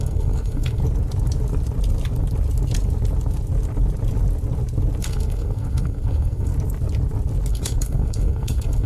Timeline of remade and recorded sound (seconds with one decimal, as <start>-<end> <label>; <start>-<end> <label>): 0.0-0.8 remade; 0.8-5.0 recorded; 5.0-6.5 remade; 6.5-7.5 recorded; 7.5-8.9 remade